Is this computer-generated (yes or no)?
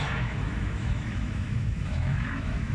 yes